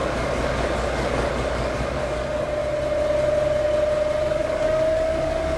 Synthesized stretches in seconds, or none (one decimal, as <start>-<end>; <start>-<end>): 0.0-2.6; 4.2-5.6